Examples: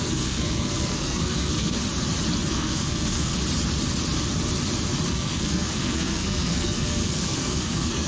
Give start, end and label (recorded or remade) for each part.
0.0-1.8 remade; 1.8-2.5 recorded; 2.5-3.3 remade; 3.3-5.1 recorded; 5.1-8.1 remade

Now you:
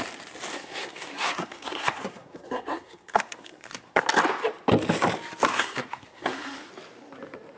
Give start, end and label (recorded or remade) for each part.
0.0-0.5 recorded; 0.5-4.0 remade; 4.0-5.5 recorded; 5.5-6.7 remade; 6.7-7.6 recorded

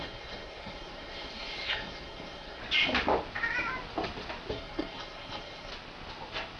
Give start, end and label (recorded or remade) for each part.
0.0-2.6 remade; 2.6-4.5 recorded; 4.5-5.7 remade; 5.7-6.6 recorded

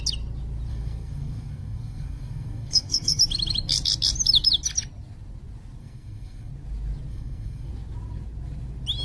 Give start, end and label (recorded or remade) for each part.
0.0-0.7 recorded; 0.7-3.2 remade; 3.2-5.8 recorded; 5.8-6.5 remade; 6.5-7.1 recorded; 7.1-7.7 remade; 7.7-9.0 recorded

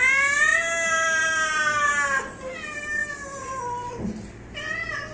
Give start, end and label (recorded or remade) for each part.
0.0-5.1 recorded